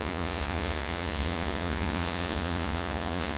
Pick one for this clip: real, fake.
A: fake